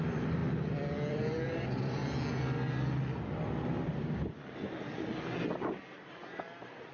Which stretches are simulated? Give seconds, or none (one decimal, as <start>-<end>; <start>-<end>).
0.0-0.4; 1.1-2.0; 6.0-6.9